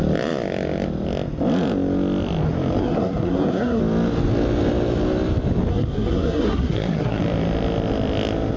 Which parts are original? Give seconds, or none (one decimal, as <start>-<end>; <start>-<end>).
0.0-2.8; 3.8-5.7; 7.2-8.6